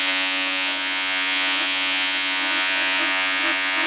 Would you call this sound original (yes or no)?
no